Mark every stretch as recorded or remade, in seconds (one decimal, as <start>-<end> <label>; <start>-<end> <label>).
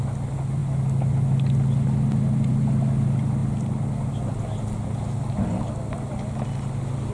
0.0-7.1 recorded